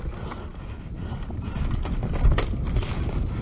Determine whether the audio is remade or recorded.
recorded